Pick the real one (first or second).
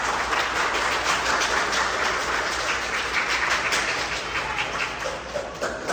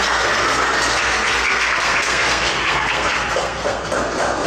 first